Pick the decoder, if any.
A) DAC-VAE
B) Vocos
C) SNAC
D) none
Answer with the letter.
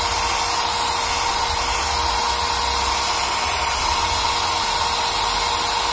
D